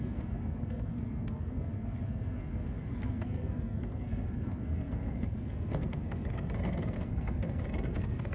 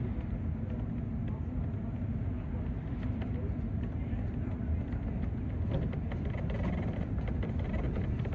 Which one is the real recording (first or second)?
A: second